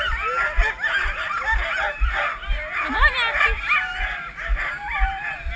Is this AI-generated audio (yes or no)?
no